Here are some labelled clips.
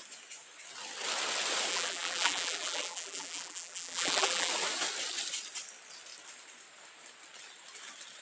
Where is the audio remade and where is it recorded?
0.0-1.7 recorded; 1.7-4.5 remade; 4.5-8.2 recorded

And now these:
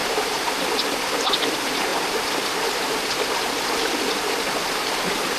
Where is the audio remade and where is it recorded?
0.0-5.4 recorded

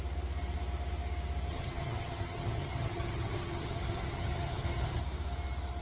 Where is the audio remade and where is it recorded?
0.0-1.5 recorded; 1.5-5.0 remade; 5.0-5.8 recorded

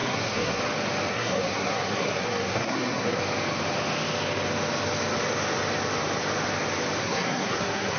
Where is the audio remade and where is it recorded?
0.0-0.6 remade; 0.6-1.1 recorded; 1.1-3.2 remade; 3.2-7.0 recorded; 7.0-8.0 remade

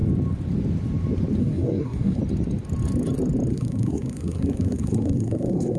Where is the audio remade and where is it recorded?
0.0-1.4 recorded; 1.4-2.2 remade; 2.2-3.5 recorded; 3.5-5.8 remade

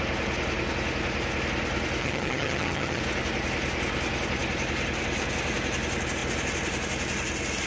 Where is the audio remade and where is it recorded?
0.0-2.0 recorded; 2.0-3.0 remade; 3.0-7.7 recorded